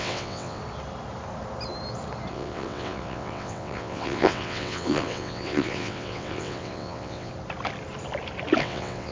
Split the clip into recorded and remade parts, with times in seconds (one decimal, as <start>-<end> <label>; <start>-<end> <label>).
0.0-0.6 remade; 0.6-2.3 recorded; 2.3-7.3 remade; 7.3-8.6 recorded; 8.6-9.1 remade